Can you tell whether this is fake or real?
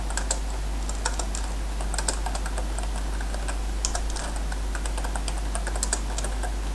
real